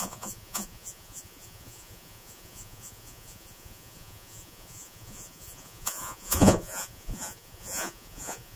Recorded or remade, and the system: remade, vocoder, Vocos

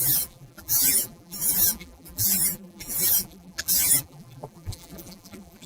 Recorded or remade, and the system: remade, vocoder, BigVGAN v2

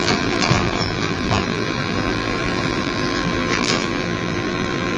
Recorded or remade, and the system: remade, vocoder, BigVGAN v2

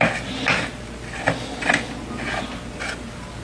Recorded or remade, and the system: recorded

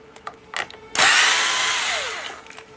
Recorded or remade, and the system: recorded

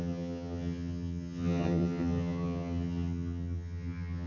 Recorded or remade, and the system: remade, vocoder, HiFi-GAN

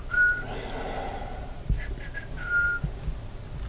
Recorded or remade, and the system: recorded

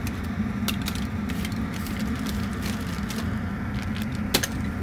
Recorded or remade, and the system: recorded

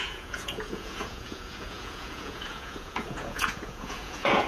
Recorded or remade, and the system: remade, vocoder, Vocos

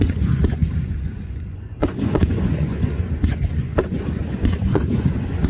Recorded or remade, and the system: remade, vocoder, Vocos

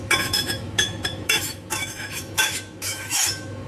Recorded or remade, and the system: remade, autoencoder, DAC-VAE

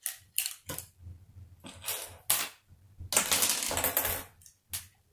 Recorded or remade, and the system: recorded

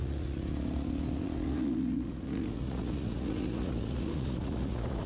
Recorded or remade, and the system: remade, vocoder, Vocos